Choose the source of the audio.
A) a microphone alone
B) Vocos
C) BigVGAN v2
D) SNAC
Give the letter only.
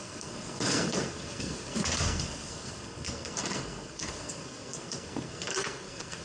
D